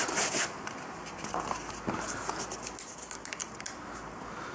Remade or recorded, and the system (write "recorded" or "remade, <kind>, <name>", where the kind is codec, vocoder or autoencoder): recorded